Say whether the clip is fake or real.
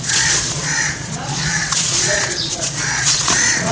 fake